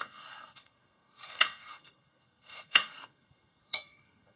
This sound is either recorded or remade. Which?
remade